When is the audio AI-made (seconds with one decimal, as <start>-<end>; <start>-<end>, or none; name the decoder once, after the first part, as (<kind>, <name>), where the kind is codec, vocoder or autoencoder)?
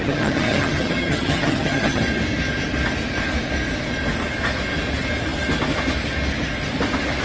0.0-2.0 (vocoder, HiFi-GAN)